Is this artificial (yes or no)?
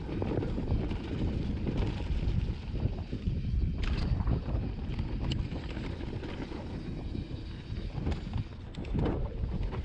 no